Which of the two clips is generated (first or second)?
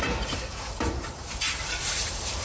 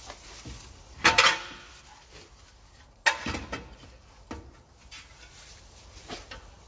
first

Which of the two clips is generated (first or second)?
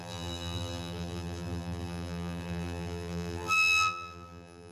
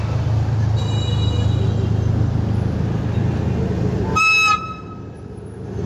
first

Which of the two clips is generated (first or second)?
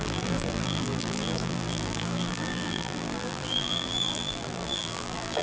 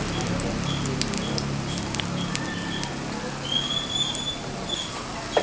first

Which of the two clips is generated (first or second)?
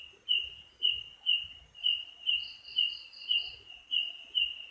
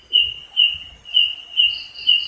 first